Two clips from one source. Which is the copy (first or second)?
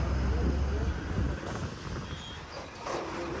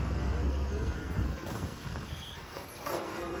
second